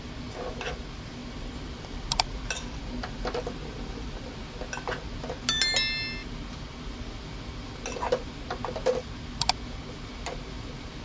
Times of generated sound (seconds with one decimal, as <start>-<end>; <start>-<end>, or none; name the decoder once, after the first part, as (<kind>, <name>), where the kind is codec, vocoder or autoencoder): 1.2-4.5 (vocoder, BigVGAN v2); 6.2-6.8